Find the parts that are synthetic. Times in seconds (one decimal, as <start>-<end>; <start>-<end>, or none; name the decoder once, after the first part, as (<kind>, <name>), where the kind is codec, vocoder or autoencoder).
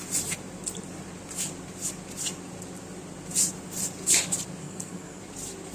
4.6-5.2 (codec, SNAC)